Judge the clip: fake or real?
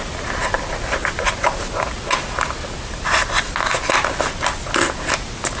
real